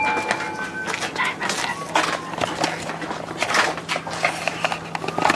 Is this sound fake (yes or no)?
no